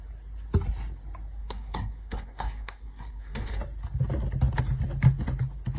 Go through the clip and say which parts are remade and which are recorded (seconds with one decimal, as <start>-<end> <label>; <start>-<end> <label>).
0.0-1.4 recorded; 1.4-3.6 remade; 3.6-5.8 recorded